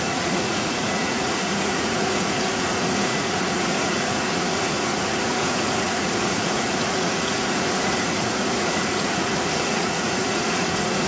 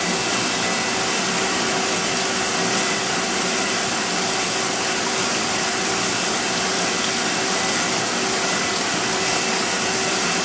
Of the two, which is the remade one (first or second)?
first